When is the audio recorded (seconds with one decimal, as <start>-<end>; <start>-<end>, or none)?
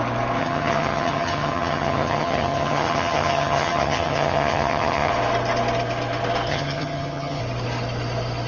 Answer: 0.0-0.4; 5.1-6.5; 7.4-8.5